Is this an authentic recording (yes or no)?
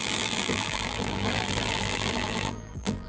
no